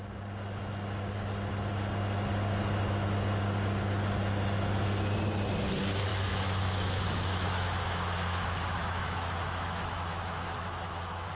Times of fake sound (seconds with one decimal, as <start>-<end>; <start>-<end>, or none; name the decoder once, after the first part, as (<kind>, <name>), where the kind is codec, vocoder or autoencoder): 6.1-11.3 (autoencoder, DAC-VAE)